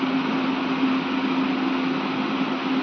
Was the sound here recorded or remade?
recorded